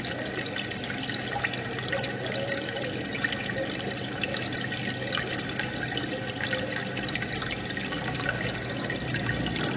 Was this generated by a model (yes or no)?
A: no